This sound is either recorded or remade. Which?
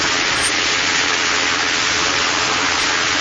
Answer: remade